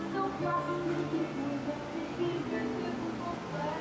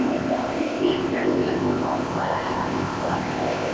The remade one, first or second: second